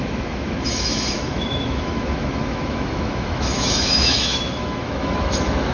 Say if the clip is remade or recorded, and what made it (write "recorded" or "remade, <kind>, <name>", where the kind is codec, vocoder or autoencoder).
remade, autoencoder, DAC-VAE